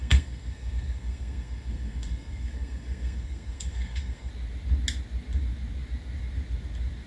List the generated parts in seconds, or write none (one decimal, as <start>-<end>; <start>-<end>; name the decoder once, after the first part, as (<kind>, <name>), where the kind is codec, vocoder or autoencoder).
0.0-4.3 (codec, SNAC)